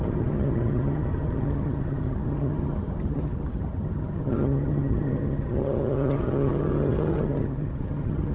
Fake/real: fake